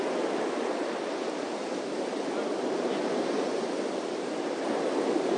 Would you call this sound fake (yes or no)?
no